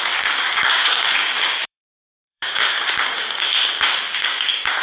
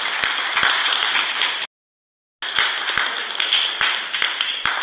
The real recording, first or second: second